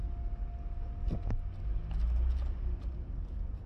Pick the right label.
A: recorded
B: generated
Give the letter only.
A